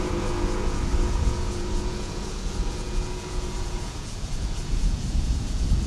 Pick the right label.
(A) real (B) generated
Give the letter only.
B